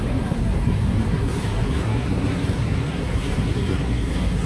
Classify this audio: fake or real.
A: fake